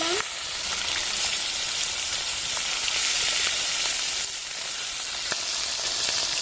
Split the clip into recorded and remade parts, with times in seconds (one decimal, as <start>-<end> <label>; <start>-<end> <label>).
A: 0.0-6.4 recorded